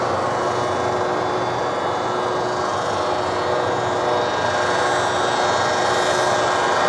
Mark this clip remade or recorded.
recorded